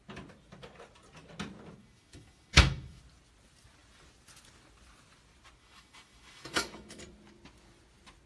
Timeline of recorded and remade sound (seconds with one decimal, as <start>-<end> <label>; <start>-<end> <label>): 0.0-1.8 recorded; 1.8-3.0 remade; 3.0-5.6 recorded; 5.6-7.0 remade; 7.0-8.3 recorded